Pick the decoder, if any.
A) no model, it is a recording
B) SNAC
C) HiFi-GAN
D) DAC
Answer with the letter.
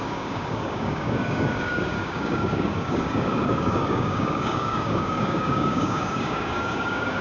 D